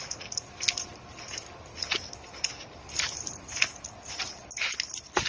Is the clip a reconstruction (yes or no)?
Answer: no